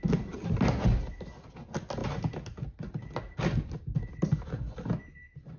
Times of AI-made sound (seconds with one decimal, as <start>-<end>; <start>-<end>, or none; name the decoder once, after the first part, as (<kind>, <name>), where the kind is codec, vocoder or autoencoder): none